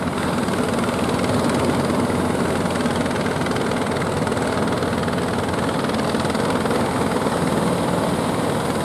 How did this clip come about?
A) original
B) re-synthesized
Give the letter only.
A